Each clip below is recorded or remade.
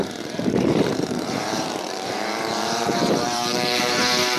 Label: remade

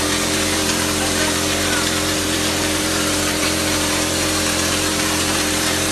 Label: remade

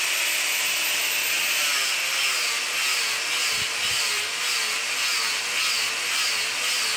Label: recorded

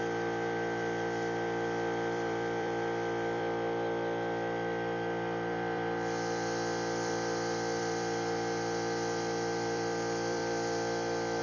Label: remade